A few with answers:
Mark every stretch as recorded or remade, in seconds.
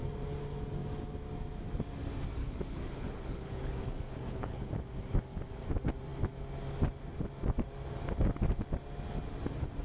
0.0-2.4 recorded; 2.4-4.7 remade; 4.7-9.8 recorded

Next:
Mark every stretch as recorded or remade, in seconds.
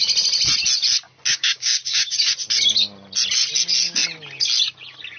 0.0-1.3 recorded; 1.3-2.3 remade; 2.3-5.2 recorded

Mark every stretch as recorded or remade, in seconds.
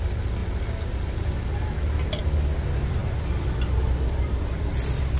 0.0-5.2 recorded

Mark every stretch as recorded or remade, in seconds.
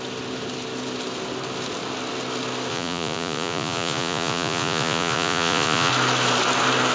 0.0-2.7 recorded; 2.7-5.9 remade; 5.9-6.9 recorded